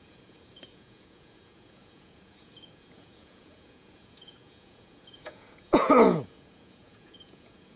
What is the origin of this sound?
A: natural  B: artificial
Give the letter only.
B